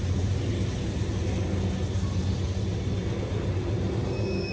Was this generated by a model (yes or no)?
no